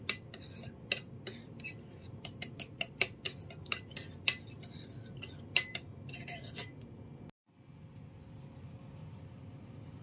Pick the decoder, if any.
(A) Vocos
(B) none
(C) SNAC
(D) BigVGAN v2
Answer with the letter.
B